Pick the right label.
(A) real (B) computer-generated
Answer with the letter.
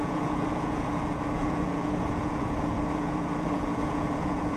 B